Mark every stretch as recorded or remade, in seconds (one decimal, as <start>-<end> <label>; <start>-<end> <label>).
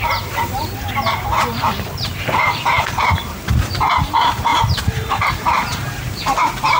0.0-6.8 remade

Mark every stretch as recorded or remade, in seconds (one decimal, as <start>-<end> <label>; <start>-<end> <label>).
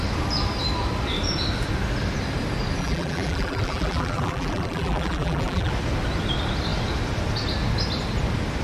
0.0-2.8 recorded; 2.8-5.7 remade; 5.7-8.6 recorded